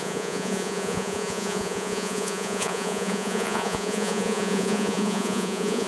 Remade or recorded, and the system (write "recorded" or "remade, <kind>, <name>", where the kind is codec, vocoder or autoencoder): remade, vocoder, Vocos